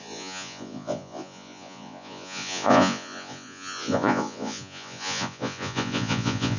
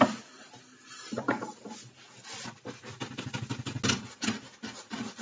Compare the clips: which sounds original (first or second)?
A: second